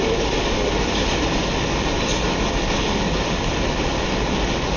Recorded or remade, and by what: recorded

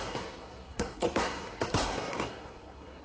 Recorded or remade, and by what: remade, codec, SNAC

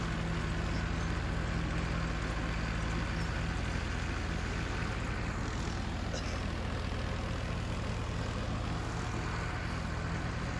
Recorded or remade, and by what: recorded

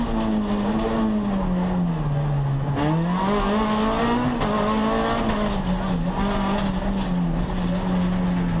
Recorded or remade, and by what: recorded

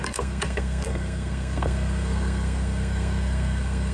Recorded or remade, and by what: remade, codec, SNAC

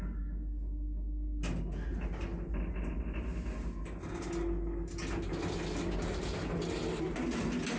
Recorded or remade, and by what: recorded